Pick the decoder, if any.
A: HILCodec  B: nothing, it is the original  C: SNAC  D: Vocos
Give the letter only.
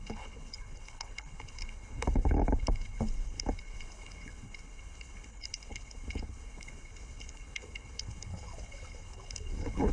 A